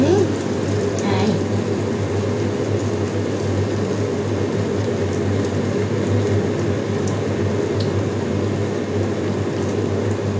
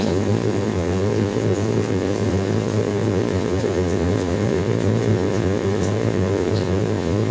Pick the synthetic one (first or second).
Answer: second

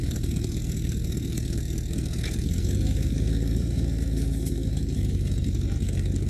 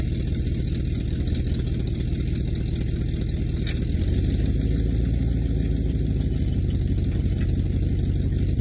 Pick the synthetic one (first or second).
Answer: first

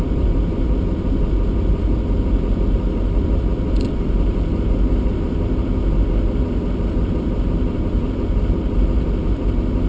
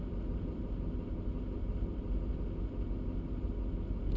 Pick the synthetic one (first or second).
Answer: first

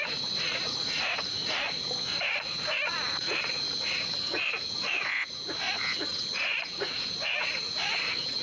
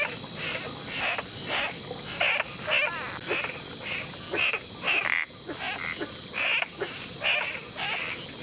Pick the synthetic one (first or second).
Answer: first